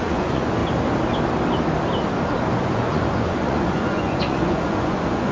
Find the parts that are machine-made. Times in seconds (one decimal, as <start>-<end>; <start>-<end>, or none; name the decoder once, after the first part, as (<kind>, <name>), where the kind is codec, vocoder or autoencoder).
0.0-0.6 (vocoder, Vocos); 2.6-5.3